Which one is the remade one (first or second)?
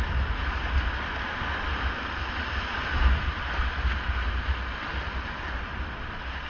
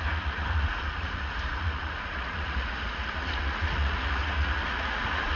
second